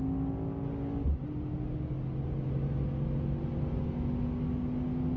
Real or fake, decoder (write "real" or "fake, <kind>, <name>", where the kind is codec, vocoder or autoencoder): real